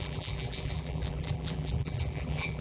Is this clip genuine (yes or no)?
no